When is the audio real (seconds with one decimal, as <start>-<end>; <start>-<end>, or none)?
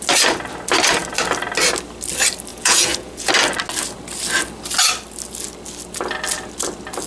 0.0-2.5; 3.3-7.1